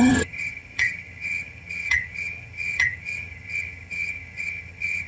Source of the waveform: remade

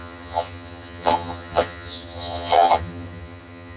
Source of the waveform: remade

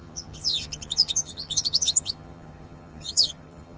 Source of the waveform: remade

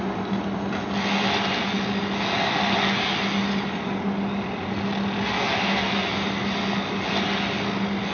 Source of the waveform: recorded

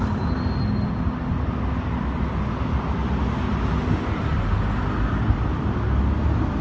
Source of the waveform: recorded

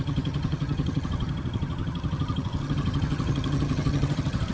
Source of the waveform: remade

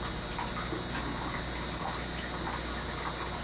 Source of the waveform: recorded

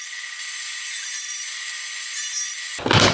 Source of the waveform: recorded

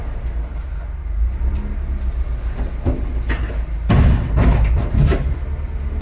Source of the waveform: recorded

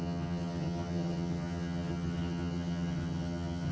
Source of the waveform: remade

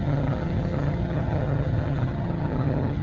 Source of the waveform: remade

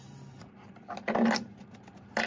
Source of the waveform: recorded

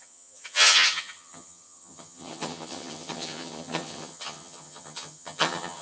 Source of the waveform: remade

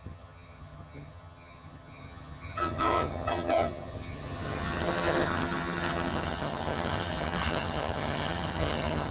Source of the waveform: remade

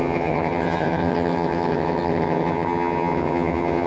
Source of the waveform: remade